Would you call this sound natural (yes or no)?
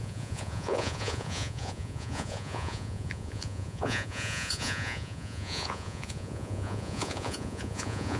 no